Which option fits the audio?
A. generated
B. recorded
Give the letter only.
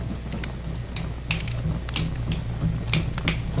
B